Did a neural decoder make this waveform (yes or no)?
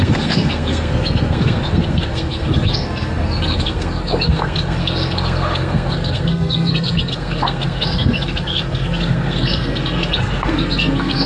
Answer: yes